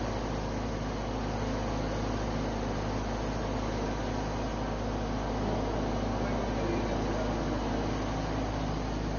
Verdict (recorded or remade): recorded